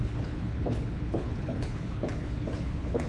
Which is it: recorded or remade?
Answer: remade